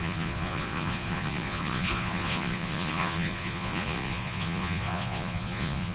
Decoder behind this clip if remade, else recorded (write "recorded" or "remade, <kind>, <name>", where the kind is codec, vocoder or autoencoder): remade, vocoder, Vocos